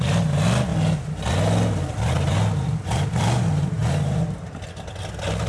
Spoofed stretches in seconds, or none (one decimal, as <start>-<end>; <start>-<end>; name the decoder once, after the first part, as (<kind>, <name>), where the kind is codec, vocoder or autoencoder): none